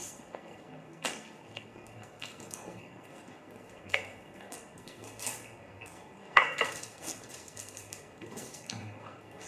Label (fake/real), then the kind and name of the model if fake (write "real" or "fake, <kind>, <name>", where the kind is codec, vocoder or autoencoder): fake, codec, SNAC